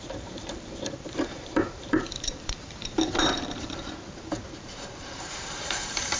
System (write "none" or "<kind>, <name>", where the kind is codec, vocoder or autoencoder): vocoder, BigVGAN v2